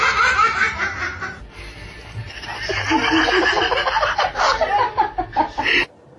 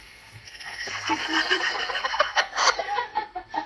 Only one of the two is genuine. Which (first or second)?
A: first